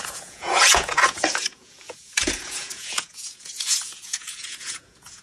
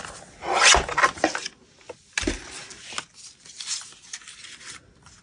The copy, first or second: first